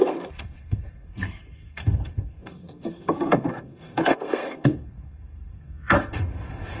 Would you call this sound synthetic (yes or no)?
yes